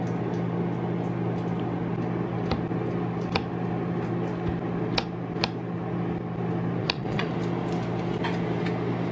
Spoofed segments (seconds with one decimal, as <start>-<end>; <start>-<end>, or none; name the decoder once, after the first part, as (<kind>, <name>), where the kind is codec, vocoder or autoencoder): 6.8-7.3 (vocoder, Vocos)